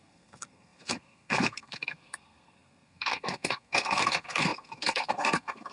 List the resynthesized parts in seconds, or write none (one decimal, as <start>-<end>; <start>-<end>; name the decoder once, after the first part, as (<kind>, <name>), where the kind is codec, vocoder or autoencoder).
0.0-5.7 (codec, SNAC)